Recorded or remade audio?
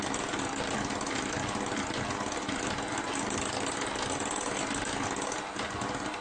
recorded